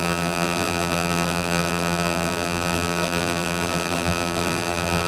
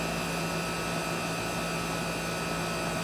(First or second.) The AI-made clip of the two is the first